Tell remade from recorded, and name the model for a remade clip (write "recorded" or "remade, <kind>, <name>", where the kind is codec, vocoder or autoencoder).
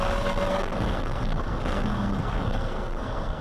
remade, codec, SNAC